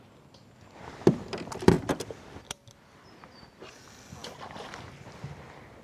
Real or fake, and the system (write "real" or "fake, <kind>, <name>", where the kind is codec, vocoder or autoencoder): real